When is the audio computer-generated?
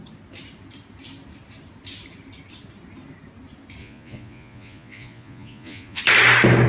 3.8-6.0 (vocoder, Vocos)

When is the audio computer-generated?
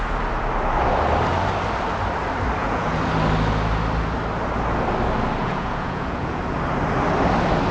2.6-3.1 (vocoder, Vocos); 5.4-6.4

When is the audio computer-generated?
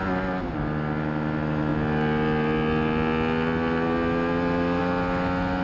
none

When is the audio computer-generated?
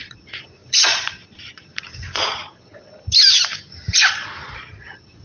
0.0-2.9 (vocoder, Vocos); 4.1-5.2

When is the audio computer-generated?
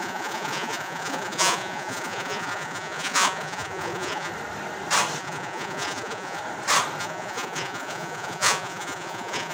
0.0-4.3 (vocoder, Vocos); 5.2-6.4; 7.0-9.5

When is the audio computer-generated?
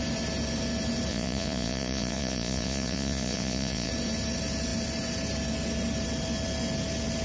1.1-3.9 (vocoder, Vocos)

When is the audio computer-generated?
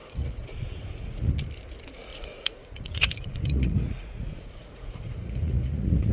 0.0-1.3 (vocoder, Vocos); 2.1-6.1